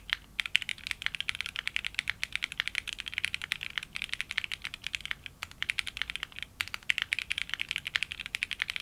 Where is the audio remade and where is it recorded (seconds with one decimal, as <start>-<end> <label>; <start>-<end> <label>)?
0.0-8.8 recorded